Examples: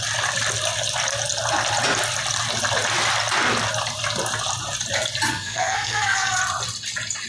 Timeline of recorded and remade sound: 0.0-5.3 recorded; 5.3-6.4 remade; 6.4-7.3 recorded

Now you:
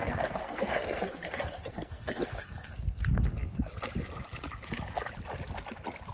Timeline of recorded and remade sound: 0.0-3.7 remade; 3.7-6.1 recorded

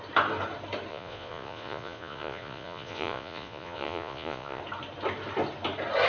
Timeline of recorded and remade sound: 0.0-0.9 recorded; 0.9-4.6 remade; 4.6-6.1 recorded

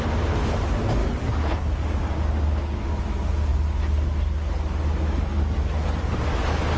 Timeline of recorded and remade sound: 0.0-1.0 recorded; 1.0-2.2 remade; 2.2-6.8 recorded

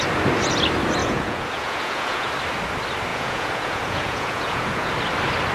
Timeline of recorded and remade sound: 0.0-1.0 recorded; 1.0-2.3 remade; 2.3-3.1 recorded; 3.1-4.9 remade; 4.9-5.5 recorded

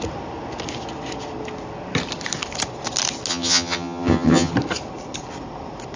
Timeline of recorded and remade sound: 0.0-3.3 recorded; 3.3-4.5 remade; 4.5-6.0 recorded

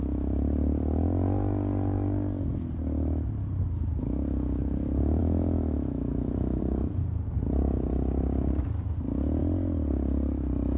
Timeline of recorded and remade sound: 0.0-5.2 recorded; 5.2-6.6 remade; 6.6-10.8 recorded